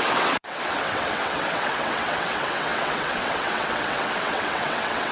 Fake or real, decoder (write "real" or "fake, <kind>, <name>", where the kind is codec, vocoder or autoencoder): fake, vocoder, WaveNeXt